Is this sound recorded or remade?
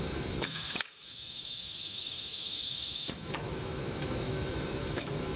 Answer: remade